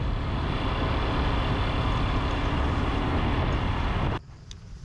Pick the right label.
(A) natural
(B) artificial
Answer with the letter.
A